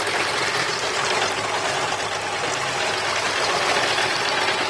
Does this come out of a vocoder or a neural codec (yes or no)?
no